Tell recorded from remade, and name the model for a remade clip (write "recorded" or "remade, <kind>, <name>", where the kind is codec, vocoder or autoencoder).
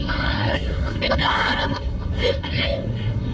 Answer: remade, codec, SNAC